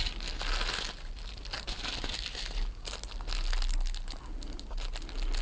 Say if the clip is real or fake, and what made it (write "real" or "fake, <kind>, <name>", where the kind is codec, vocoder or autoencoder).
real